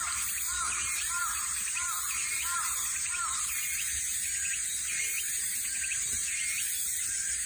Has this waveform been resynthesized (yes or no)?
yes